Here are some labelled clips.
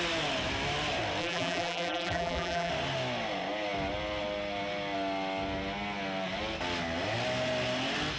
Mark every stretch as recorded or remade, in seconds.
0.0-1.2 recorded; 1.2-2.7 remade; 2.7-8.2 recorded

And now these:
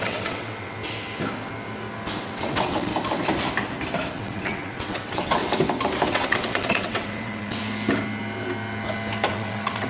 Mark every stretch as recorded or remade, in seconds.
0.0-0.8 remade; 0.8-2.2 recorded; 2.2-2.9 remade; 2.9-4.1 recorded; 4.1-5.4 remade; 5.4-6.1 recorded; 6.1-7.6 remade; 7.6-9.3 recorded; 9.3-9.9 remade

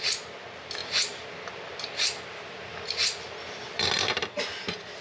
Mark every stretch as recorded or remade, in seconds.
0.0-5.0 recorded

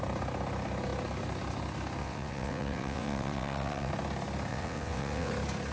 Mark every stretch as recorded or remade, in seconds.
0.0-2.0 recorded; 2.0-3.9 remade; 3.9-4.5 recorded; 4.5-5.3 remade; 5.3-5.7 recorded

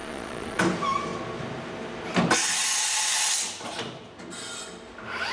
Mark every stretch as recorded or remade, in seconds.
0.0-0.6 remade; 0.6-5.3 recorded

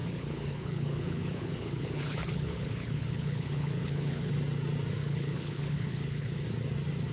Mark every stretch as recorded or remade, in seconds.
0.0-4.3 remade; 4.3-5.0 recorded; 5.0-6.4 remade; 6.4-7.1 recorded